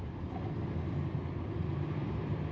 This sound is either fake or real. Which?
real